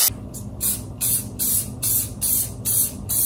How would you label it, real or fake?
real